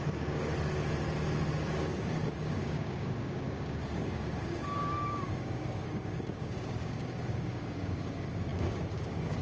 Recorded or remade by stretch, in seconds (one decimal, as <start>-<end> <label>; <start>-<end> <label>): 0.0-0.5 remade; 0.5-1.5 recorded; 1.5-9.4 remade